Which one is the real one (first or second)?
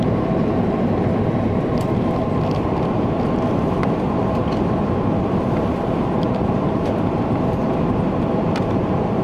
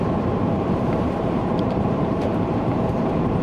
first